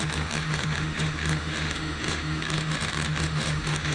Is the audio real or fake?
fake